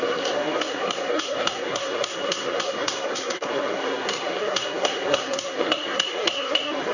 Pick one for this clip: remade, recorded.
remade